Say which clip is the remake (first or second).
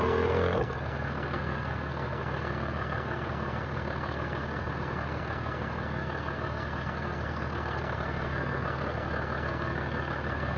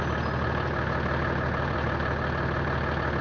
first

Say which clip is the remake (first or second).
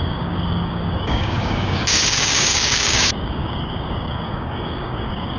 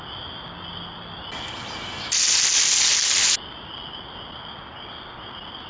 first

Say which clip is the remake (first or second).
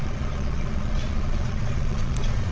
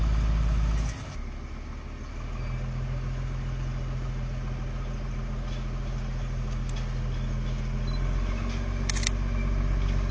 first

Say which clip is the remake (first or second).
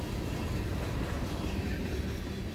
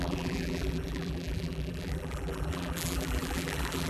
second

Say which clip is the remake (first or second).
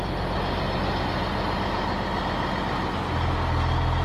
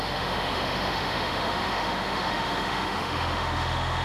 second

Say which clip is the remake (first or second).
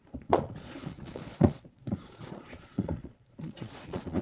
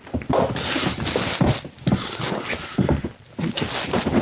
first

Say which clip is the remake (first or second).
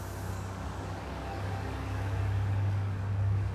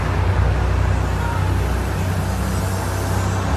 first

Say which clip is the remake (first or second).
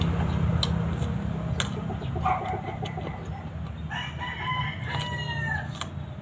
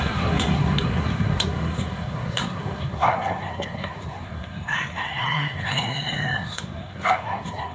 second